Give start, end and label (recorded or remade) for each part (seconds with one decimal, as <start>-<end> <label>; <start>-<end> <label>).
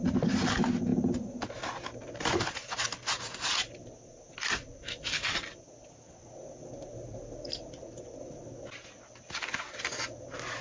0.0-10.6 recorded